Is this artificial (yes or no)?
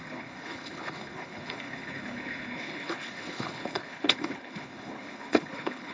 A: yes